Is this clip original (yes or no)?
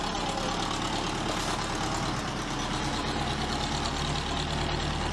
yes